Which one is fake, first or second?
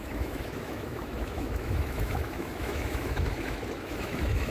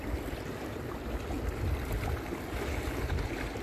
first